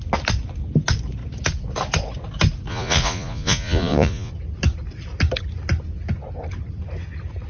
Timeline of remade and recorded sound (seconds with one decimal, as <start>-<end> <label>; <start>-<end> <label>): 0.0-2.7 recorded; 2.7-4.3 remade; 4.3-7.5 recorded